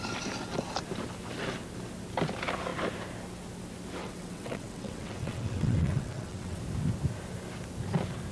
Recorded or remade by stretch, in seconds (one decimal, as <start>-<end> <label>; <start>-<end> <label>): 0.0-4.0 recorded; 4.0-6.6 remade; 6.6-8.3 recorded